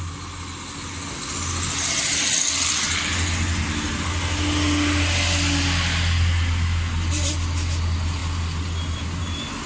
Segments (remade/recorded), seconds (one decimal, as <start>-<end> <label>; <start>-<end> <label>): 0.0-9.7 recorded